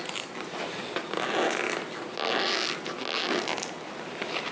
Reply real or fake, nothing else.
real